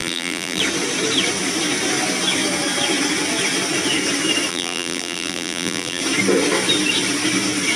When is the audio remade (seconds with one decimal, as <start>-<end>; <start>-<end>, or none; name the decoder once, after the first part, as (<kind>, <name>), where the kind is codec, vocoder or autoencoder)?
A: 0.0-0.6 (vocoder, BigVGAN v2); 4.5-6.0

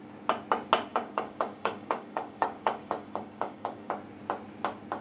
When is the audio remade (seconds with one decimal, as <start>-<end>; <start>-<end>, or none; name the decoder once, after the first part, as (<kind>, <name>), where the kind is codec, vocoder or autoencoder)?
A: 0.9-3.9 (codec, DAC)

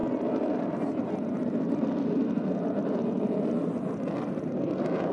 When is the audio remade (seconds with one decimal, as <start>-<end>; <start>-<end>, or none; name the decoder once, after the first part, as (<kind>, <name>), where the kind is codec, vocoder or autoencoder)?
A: none

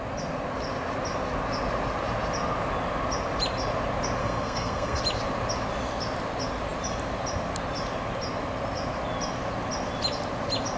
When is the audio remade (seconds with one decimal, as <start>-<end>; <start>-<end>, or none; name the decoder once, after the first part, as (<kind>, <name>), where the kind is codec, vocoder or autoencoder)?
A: 4.2-5.0 (codec, SNAC)

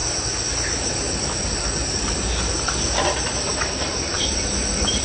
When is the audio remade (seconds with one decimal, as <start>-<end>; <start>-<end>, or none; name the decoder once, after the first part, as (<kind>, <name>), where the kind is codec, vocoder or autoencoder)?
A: 3.5-4.3 (vocoder, BigVGAN v2)

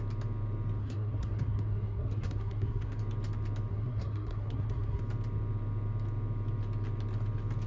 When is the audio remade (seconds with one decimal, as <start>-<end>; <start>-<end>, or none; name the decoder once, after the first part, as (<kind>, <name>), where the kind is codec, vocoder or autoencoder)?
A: 0.8-3.0 (codec, SNAC); 3.7-5.0

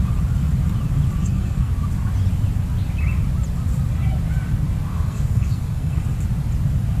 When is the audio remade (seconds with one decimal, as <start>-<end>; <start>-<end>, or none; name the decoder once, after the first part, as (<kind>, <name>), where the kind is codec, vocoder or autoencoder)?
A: 1.2-1.7 (codec, SNAC); 4.9-6.0

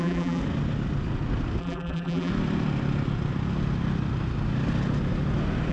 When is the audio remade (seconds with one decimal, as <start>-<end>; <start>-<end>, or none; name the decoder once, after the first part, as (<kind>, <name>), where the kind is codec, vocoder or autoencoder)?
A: 0.0-0.4 (vocoder, BigVGAN v2); 1.6-2.3